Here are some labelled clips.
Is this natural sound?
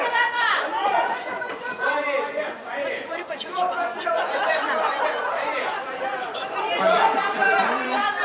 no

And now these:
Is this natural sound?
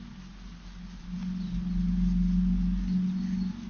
yes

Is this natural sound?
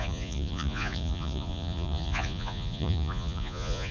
no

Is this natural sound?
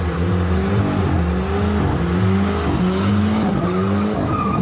yes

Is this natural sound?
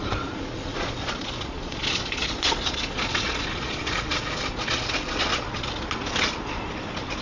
no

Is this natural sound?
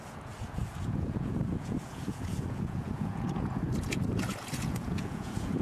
no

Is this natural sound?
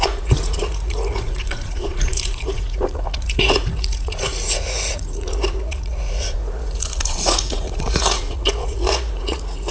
no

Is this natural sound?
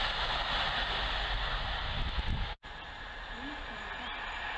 yes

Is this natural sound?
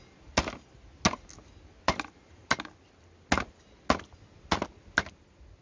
yes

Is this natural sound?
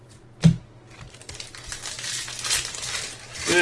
yes